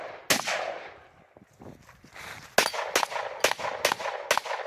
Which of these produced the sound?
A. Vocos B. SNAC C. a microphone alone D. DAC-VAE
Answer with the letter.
C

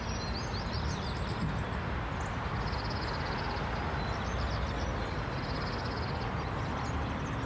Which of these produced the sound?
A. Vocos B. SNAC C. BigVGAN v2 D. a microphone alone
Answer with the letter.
D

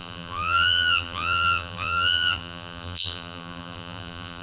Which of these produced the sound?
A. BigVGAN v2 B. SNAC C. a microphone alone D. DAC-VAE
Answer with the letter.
A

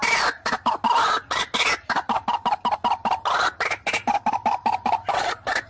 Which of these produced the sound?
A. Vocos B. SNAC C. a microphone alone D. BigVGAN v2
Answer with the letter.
C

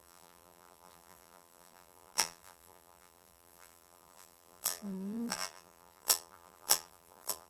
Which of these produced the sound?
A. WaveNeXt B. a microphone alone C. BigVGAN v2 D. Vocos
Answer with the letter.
C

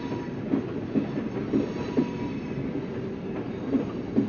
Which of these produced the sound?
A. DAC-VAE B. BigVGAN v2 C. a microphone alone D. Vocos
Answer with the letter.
C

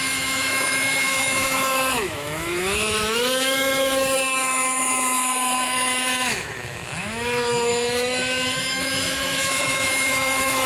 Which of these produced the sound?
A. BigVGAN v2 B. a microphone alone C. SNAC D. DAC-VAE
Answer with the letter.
D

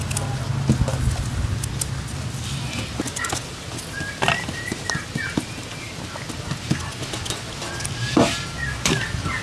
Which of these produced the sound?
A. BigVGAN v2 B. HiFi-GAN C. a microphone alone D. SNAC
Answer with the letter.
C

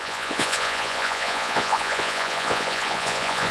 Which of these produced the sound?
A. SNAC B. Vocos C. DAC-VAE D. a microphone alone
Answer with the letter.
B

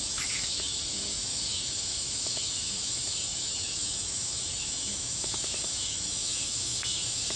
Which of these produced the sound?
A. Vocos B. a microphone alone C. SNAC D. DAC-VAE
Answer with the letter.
D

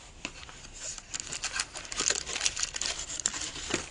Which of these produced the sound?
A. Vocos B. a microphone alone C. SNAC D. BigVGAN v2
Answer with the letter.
B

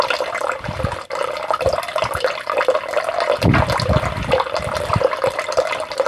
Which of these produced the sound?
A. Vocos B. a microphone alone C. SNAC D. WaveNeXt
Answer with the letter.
B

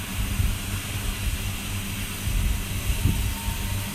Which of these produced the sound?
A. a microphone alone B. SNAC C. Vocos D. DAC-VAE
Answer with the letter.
A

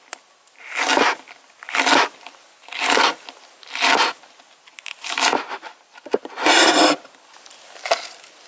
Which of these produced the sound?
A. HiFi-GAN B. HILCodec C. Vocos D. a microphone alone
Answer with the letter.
D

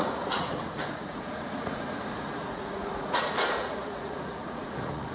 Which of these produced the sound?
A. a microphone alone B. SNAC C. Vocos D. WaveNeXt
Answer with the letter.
C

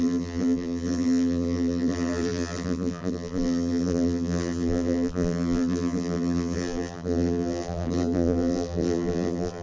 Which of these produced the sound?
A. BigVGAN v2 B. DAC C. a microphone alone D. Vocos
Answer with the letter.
A